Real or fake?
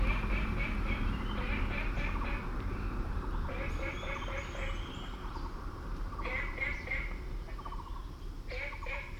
fake